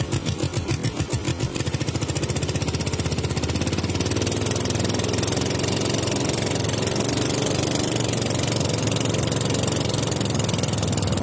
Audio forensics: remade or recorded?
recorded